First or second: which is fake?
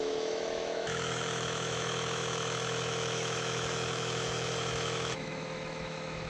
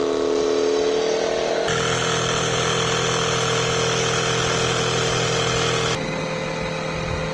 first